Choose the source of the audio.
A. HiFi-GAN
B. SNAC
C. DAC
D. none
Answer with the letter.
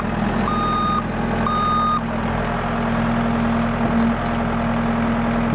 D